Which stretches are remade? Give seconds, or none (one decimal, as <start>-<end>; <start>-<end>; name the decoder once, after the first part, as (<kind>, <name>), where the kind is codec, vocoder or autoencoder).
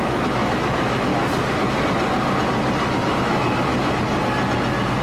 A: 0.0-1.1 (autoencoder, DAC-VAE); 3.2-3.7